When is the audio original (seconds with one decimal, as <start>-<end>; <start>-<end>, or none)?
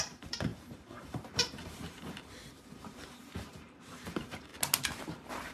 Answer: 4.5-5.0